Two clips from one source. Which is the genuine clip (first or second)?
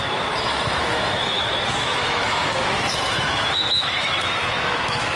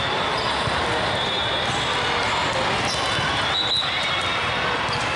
second